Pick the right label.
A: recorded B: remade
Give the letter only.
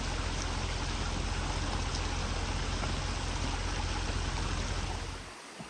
A